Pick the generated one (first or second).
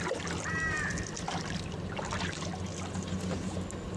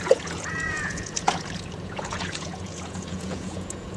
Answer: second